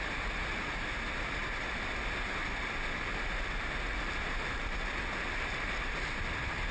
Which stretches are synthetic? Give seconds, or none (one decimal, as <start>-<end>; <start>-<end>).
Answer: none

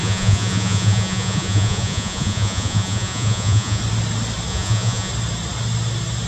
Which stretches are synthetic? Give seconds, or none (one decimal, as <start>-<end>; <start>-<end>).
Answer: 0.0-3.8; 4.5-5.1

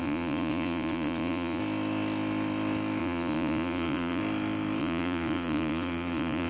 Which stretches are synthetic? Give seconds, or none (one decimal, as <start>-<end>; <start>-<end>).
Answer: 0.0-1.6; 3.0-4.2; 4.8-6.5

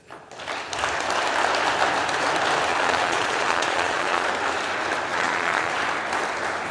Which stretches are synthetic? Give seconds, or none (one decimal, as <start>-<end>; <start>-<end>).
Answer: 2.7-4.3; 5.1-5.7